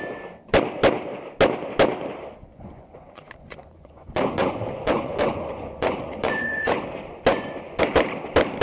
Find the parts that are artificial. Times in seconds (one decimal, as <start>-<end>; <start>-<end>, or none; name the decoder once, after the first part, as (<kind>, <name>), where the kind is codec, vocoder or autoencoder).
2.5-6.8 (vocoder, Vocos); 7.3-7.8